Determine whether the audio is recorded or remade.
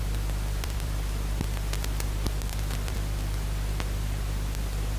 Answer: remade